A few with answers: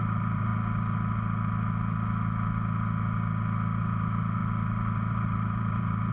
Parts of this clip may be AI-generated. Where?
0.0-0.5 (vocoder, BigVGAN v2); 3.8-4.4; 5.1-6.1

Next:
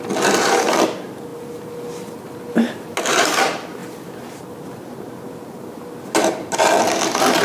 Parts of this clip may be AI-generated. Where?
1.3-2.4 (vocoder, BigVGAN v2); 3.8-4.4

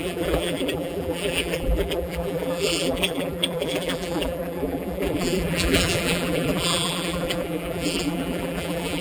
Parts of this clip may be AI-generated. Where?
0.0-9.0 (vocoder, BigVGAN v2)

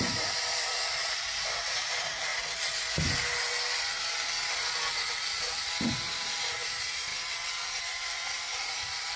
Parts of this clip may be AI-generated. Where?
0.0-2.3 (vocoder, BigVGAN v2); 5.4-7.1; 7.8-9.2

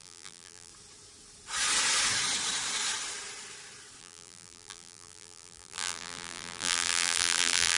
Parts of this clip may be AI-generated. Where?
0.0-0.7 (vocoder, BigVGAN v2); 4.0-7.8